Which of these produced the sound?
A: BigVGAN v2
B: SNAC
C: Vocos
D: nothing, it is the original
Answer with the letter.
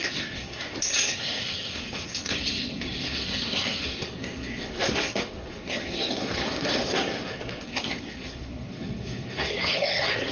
B